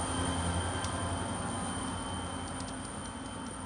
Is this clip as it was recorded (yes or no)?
yes